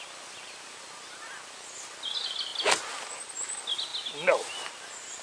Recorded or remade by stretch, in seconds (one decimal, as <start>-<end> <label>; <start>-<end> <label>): 0.0-5.2 recorded

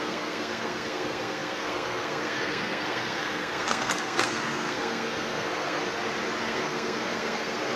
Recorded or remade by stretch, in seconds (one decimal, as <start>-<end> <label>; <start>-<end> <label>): 0.0-5.8 remade; 5.8-6.4 recorded; 6.4-7.8 remade

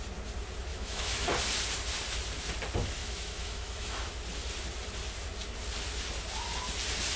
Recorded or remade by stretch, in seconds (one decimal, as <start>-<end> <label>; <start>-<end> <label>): 0.0-0.7 recorded; 0.7-1.3 remade; 1.3-3.0 recorded; 3.0-4.1 remade; 4.1-7.2 recorded

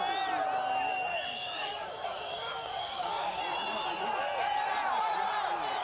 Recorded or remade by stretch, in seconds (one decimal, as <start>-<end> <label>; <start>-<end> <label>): 0.0-1.1 recorded; 1.1-3.4 remade; 3.4-5.8 recorded

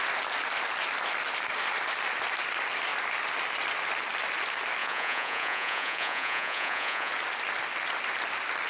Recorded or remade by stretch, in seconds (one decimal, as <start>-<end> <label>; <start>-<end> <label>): 0.0-4.8 recorded; 4.8-7.1 remade; 7.1-8.7 recorded

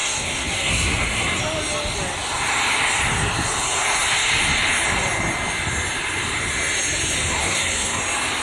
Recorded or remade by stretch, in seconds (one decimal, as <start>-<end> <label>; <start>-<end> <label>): 0.0-1.4 remade; 1.4-7.4 recorded; 7.4-8.0 remade; 8.0-8.4 recorded

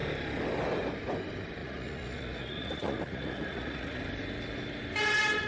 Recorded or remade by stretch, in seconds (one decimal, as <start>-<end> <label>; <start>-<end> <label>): 0.0-1.6 recorded; 1.6-4.0 remade; 4.0-5.5 recorded